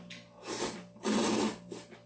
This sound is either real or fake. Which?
real